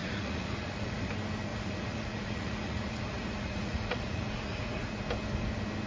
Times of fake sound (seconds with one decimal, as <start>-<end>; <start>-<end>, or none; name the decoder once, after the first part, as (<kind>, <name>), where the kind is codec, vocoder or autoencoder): 0.0-1.1 (vocoder, Vocos); 1.5-5.0